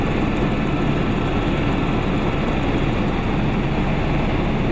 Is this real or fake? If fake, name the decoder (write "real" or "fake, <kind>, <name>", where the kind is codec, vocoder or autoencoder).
real